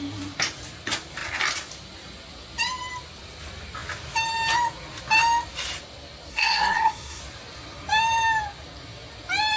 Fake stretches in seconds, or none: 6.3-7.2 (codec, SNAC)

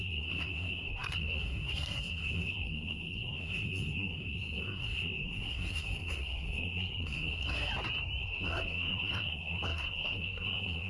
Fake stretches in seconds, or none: 0.0-7.7 (codec, SNAC); 8.2-10.9

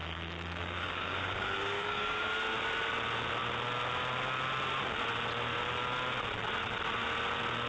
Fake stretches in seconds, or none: 0.0-2.3 (codec, DAC)

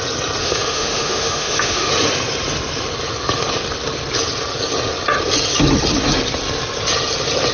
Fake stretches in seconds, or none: 0.4-1.9 (autoencoder, DAC-VAE)

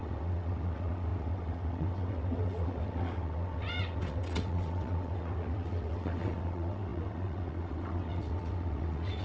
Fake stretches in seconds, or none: 0.0-9.2 (vocoder, WaveNeXt)

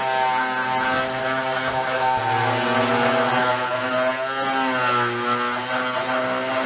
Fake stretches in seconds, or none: 1.2-2.2 (codec, DAC); 3.4-3.9

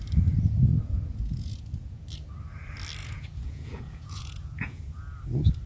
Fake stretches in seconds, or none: 0.7-2.0 (vocoder, Vocos); 3.0-5.0